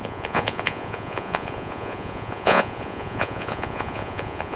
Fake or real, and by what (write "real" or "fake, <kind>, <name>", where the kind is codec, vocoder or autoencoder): fake, vocoder, Vocos